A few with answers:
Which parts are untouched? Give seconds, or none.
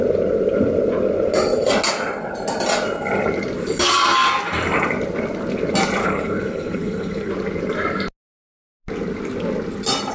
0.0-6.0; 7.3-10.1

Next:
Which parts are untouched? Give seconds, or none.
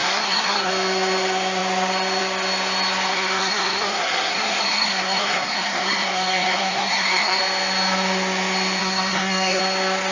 0.7-3.1; 7.4-8.8; 9.6-10.1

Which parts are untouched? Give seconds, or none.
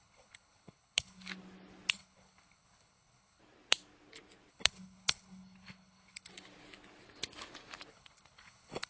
1.3-1.9; 3.4-4.5; 6.3-7.9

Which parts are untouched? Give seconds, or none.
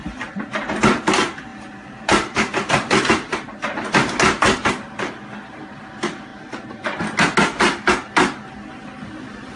0.0-1.5; 4.1-9.6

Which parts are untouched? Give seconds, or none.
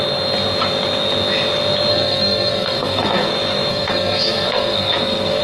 0.0-1.9; 3.3-3.7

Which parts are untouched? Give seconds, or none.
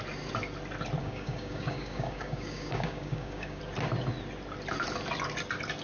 0.0-1.0; 3.6-5.8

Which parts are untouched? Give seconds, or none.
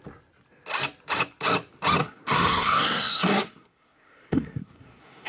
0.0-2.0